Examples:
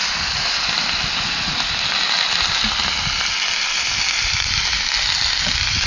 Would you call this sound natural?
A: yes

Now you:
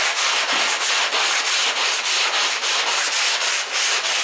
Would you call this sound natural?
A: yes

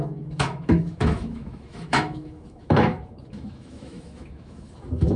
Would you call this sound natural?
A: no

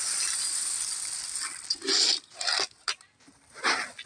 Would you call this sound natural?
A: yes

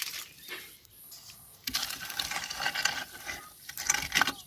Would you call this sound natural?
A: yes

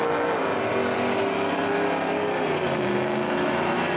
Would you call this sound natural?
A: yes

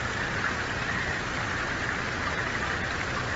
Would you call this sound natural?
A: yes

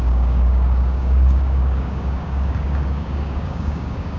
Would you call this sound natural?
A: no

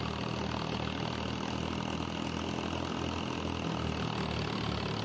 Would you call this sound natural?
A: yes